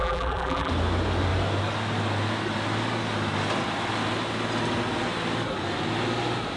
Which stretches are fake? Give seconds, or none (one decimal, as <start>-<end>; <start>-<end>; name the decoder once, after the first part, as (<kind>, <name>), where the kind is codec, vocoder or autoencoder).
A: 0.0-0.7 (vocoder, BigVGAN v2)